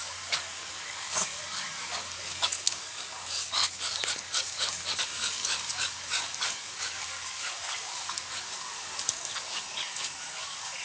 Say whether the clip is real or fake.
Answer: fake